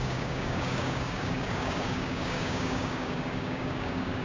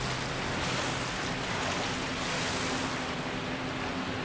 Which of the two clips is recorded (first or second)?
second